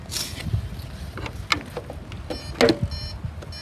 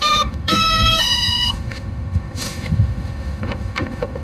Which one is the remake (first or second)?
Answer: second